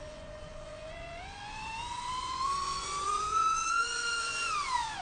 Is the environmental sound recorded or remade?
remade